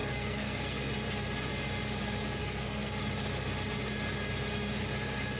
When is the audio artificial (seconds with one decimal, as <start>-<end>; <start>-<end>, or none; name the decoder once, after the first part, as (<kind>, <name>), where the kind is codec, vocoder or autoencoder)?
0.0-0.9 (codec, SNAC); 2.4-3.0